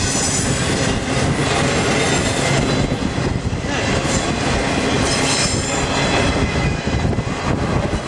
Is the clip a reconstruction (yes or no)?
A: no